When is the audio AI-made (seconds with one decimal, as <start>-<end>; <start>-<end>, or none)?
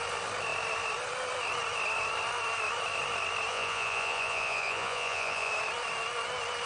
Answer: 3.5-5.5